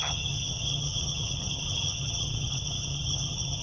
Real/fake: fake